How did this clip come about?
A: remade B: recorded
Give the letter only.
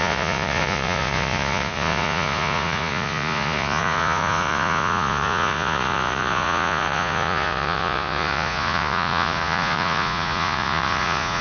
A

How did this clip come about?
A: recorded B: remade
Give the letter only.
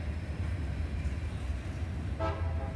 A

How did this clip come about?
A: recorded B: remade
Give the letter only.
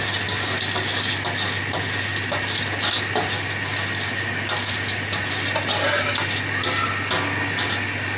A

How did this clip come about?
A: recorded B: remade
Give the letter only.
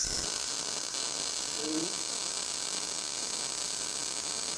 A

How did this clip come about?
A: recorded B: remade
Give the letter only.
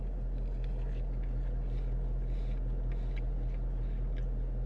A